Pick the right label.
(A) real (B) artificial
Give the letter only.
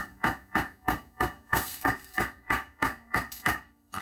B